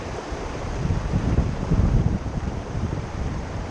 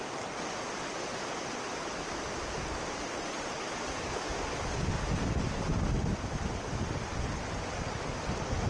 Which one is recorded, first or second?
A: second